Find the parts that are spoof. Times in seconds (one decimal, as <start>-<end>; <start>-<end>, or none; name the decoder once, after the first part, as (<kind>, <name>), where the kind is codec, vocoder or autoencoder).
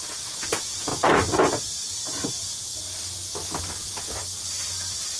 0.0-0.9 (vocoder, Vocos); 2.3-2.7; 3.7-4.2